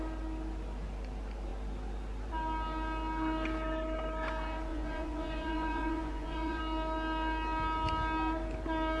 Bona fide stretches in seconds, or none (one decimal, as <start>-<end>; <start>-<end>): 0.0-4.7; 6.6-9.0